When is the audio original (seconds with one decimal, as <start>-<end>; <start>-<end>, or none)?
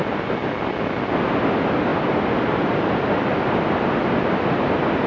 0.0-5.1